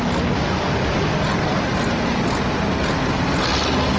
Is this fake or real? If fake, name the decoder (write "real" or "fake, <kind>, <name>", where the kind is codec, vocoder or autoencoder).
real